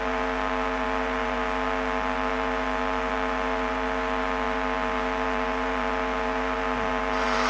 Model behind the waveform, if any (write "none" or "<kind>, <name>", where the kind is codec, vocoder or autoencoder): vocoder, BigVGAN v2